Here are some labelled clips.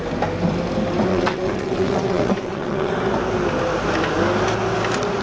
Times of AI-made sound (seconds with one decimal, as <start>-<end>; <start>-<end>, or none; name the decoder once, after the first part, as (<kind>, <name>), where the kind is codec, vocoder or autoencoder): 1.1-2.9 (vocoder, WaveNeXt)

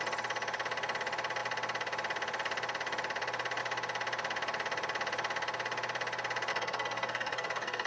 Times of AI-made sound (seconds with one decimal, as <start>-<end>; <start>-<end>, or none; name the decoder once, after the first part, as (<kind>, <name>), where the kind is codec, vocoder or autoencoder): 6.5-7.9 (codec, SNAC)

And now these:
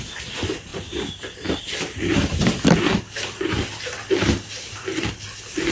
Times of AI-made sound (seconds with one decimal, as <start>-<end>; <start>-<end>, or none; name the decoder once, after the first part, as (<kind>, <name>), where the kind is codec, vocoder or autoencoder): none